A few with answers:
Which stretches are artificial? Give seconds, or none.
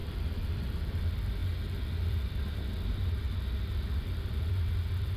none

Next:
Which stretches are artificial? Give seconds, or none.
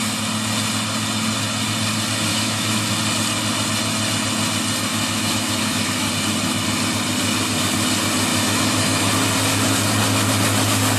2.3-2.9 (autoencoder, DAC-VAE); 4.9-6.1; 8.3-9.1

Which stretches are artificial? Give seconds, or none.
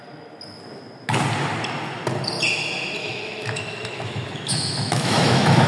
3.0-5.7 (autoencoder, DAC-VAE)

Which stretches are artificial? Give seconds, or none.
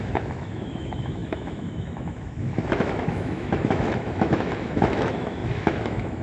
0.0-6.2 (autoencoder, DAC-VAE)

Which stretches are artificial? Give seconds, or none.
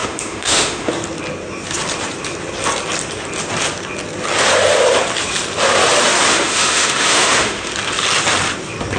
0.0-0.9 (autoencoder, DAC-VAE); 6.3-7.7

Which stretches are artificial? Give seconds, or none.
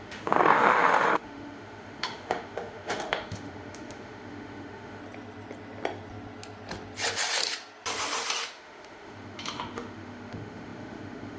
0.0-5.0 (autoencoder, DAC-VAE); 8.5-11.4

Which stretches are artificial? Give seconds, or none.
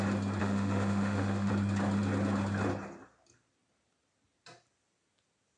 0.4-1.5 (autoencoder, DAC-VAE)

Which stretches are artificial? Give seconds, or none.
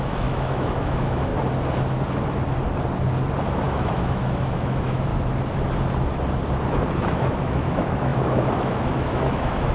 0.0-1.3 (autoencoder, DAC-VAE); 3.5-5.1; 7.0-9.7